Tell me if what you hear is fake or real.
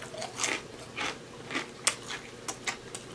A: real